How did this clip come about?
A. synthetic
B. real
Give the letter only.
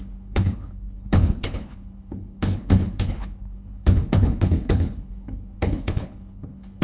A